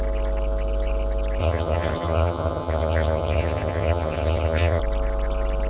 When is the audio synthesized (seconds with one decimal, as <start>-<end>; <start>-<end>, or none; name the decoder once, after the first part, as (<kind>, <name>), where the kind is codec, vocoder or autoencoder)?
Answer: 1.4-4.8 (vocoder, HiFi-GAN)